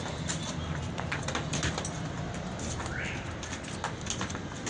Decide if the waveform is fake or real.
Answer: real